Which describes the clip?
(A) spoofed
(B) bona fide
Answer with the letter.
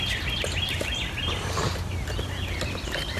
B